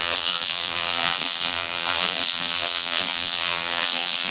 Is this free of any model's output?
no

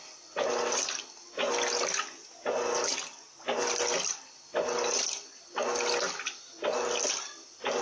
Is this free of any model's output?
yes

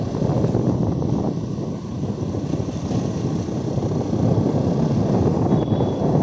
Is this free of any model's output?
yes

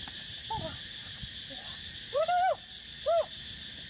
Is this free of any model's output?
yes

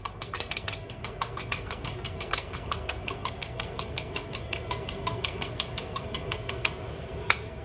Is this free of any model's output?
no